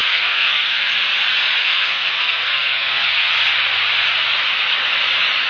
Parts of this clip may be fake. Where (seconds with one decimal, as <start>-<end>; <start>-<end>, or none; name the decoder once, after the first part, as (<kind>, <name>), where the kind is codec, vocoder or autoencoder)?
0.0-0.9 (codec, SNAC); 1.6-3.3